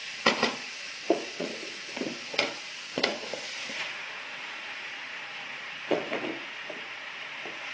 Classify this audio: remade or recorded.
remade